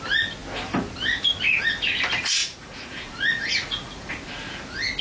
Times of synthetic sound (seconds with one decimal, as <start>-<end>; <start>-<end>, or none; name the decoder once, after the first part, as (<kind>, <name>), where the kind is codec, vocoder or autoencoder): 2.4-4.1 (vocoder, Vocos)